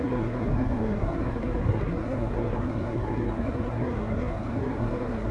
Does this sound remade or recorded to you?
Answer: remade